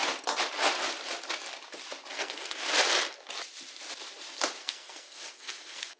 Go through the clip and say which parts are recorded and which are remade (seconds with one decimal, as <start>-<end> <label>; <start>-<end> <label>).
0.0-2.1 recorded; 2.1-2.7 remade; 2.7-4.6 recorded; 4.6-6.0 remade